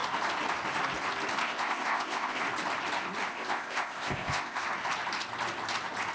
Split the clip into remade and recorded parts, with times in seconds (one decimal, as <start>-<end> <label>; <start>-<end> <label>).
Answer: 0.0-1.4 recorded; 1.4-2.4 remade; 2.4-3.3 recorded; 3.3-4.6 remade; 4.6-6.1 recorded